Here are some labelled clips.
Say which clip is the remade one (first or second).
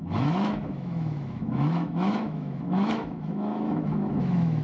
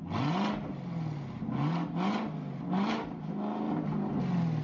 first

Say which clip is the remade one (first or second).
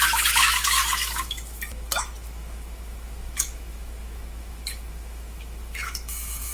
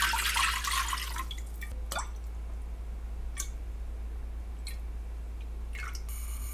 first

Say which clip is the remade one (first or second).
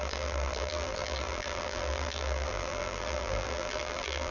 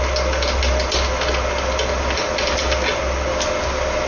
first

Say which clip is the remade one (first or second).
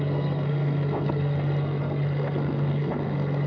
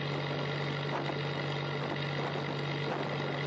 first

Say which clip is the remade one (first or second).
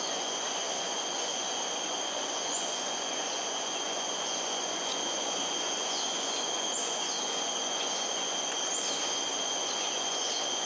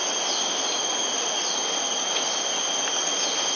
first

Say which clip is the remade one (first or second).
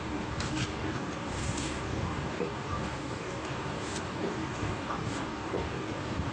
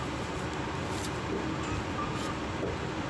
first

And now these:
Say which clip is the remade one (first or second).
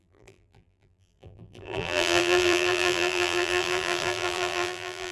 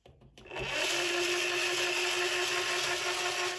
first